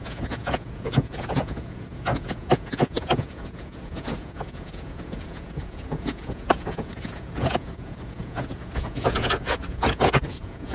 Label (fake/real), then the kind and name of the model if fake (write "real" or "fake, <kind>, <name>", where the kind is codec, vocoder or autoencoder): fake, vocoder, Vocos